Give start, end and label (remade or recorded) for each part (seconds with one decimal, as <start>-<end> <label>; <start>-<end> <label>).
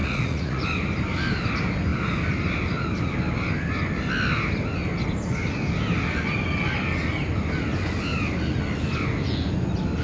0.0-0.6 remade; 0.6-10.0 recorded